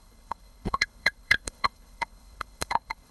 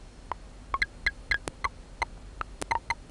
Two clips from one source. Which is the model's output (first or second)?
first